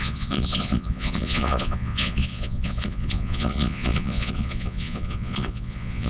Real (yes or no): no